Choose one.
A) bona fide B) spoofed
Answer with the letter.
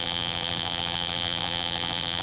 B